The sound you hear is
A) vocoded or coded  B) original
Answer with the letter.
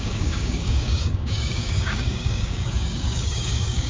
A